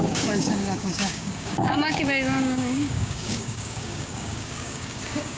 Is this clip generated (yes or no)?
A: yes